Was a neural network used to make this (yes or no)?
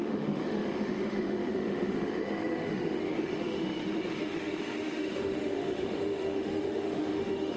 yes